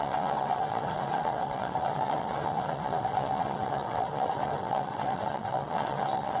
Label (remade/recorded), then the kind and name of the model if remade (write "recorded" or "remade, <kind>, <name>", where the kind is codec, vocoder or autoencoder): remade, vocoder, WaveNeXt